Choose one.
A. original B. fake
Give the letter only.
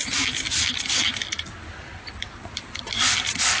A